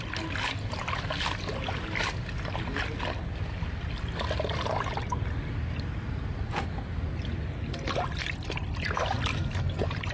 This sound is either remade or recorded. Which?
recorded